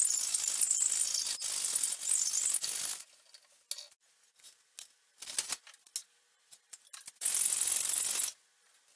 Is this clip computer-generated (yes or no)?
no